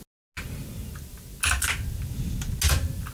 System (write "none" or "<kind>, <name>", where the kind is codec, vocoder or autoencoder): none